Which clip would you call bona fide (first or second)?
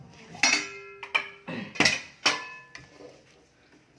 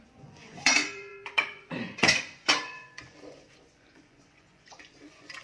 first